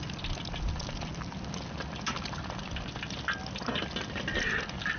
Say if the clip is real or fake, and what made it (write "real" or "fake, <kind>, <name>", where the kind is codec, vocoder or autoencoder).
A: real